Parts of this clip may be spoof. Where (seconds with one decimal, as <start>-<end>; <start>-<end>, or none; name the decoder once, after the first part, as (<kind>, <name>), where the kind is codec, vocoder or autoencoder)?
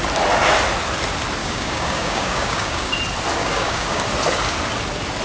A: 1.4-3.0 (codec, DAC); 3.4-4.0